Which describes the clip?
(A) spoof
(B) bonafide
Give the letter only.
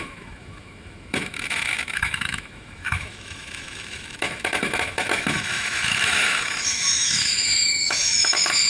A